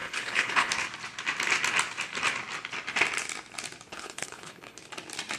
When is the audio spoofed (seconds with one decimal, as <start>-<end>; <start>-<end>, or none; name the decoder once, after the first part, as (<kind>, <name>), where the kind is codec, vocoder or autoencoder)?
0.0-0.7 (codec, HILCodec); 3.9-4.8

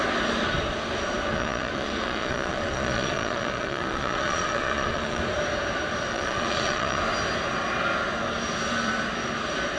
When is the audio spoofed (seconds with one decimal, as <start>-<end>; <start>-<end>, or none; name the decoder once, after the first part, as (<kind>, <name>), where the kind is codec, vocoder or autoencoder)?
1.3-5.2 (vocoder, Vocos); 6.1-7.0

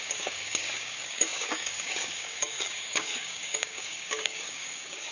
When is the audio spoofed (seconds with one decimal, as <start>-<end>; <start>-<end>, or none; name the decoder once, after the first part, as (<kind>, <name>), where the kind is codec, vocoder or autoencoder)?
0.0-5.1 (codec, DAC)